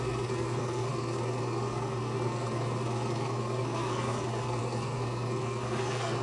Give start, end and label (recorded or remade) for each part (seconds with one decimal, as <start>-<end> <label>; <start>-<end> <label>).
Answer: 0.0-6.2 remade